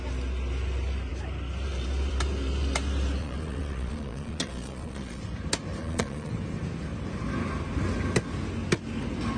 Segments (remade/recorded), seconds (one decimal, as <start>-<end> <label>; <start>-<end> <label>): 0.0-3.2 recorded; 3.2-5.2 remade; 5.2-5.8 recorded; 5.8-6.3 remade; 6.3-9.4 recorded